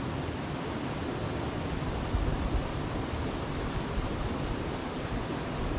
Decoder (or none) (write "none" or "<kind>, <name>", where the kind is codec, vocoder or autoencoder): none